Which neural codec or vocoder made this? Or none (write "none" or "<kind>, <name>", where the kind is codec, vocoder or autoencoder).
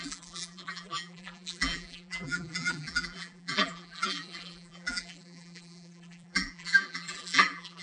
vocoder, BigVGAN v2